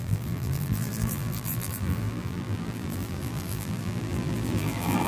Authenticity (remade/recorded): remade